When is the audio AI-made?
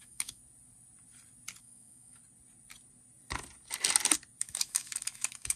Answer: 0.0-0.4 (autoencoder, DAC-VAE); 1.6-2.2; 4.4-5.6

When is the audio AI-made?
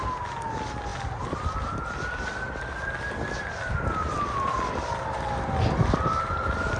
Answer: none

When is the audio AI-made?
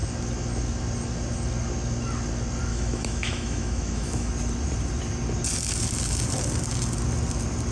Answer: 2.7-4.3 (autoencoder, DAC-VAE)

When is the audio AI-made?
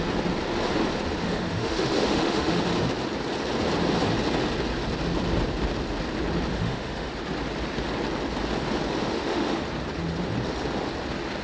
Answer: 1.2-2.6 (autoencoder, DAC-VAE); 6.5-7.1; 9.0-9.6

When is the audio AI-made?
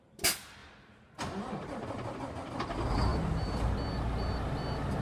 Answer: none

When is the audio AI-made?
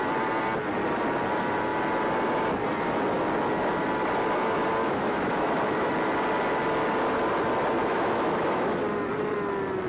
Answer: 4.8-5.9 (autoencoder, DAC-VAE); 7.8-8.8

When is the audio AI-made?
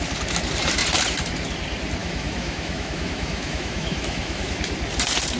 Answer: 2.0-4.6 (autoencoder, DAC-VAE)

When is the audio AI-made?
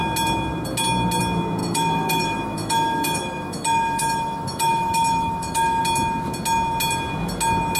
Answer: 1.6-5.8 (autoencoder, DAC-VAE)